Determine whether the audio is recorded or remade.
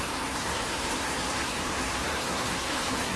remade